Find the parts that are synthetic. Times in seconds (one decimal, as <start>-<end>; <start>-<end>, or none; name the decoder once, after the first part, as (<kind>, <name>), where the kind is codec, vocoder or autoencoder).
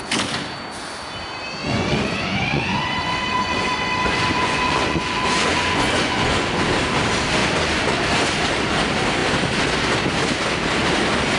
1.6-6.6 (vocoder, Vocos); 7.4-8.0